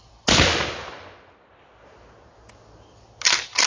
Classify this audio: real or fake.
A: real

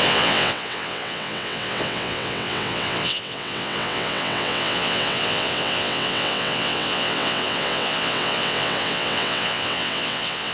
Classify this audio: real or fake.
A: fake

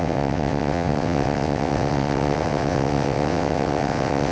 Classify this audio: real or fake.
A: fake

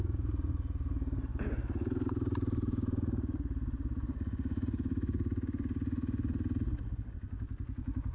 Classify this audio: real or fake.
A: real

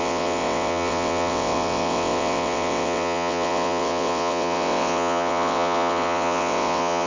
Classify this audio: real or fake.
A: fake